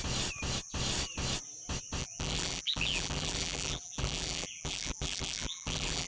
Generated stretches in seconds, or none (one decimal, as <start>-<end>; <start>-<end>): 2.0-6.1